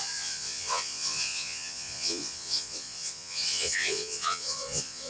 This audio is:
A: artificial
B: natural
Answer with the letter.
A